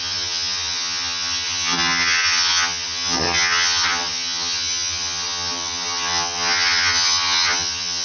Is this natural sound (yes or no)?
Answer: no